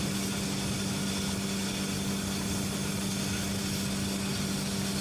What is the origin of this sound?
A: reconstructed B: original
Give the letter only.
B